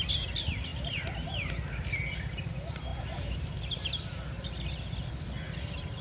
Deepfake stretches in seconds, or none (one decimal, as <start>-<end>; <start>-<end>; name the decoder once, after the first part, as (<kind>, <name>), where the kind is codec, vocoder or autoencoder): none